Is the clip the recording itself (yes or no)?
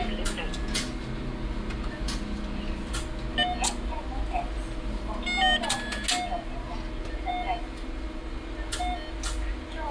yes